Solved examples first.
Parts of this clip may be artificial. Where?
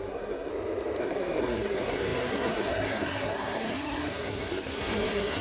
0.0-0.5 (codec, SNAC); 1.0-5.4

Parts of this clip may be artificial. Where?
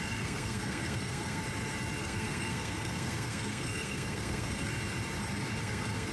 0.0-1.4 (codec, SNAC); 2.0-4.7; 5.6-6.1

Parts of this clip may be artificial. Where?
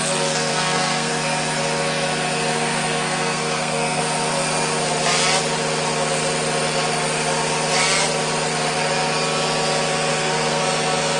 0.5-1.1 (codec, SNAC); 2.5-4.0; 10.1-10.6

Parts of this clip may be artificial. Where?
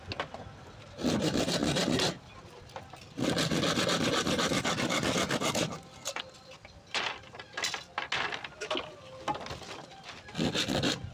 none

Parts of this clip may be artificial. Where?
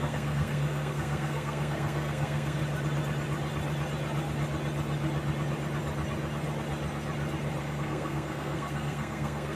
0.0-2.6 (codec, SNAC); 7.6-9.6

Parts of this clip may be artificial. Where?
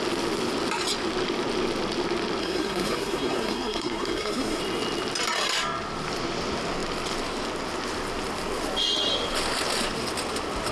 2.4-4.6 (codec, SNAC)